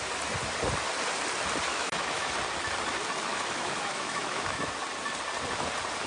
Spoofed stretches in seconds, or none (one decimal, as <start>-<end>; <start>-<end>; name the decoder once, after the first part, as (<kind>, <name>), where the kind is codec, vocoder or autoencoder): 1.7-2.3 (autoencoder, DAC-VAE); 3.3-4.7